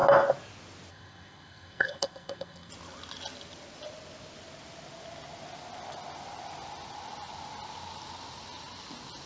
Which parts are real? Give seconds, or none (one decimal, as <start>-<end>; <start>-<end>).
0.0-0.9; 2.7-9.3